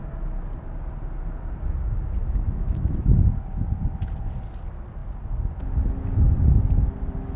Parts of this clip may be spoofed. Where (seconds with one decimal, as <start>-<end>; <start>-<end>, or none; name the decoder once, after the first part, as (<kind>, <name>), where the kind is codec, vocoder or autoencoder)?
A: 2.2-3.1 (autoencoder, DAC-VAE)